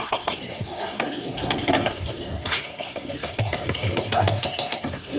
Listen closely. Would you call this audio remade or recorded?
remade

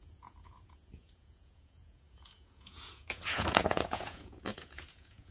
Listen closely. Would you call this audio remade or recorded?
remade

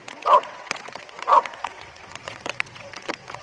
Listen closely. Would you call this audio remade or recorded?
remade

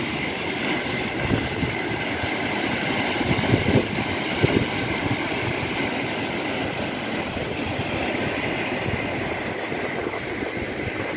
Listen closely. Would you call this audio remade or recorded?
recorded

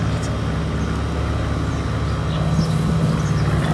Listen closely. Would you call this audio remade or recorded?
recorded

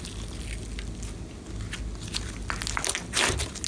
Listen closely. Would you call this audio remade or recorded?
recorded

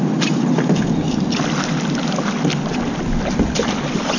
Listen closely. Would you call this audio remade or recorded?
recorded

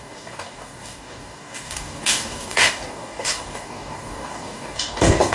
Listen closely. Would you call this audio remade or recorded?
remade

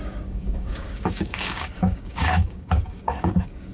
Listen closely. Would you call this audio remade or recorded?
remade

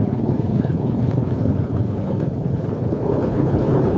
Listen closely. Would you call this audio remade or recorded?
remade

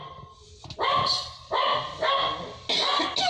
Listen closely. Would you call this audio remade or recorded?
recorded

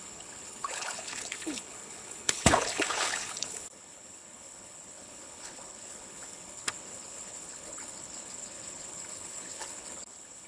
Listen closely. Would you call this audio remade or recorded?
remade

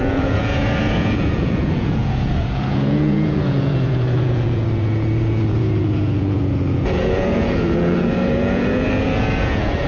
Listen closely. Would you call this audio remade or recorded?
remade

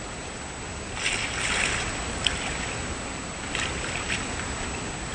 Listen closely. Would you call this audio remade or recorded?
recorded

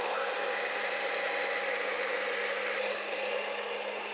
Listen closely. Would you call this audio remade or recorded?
recorded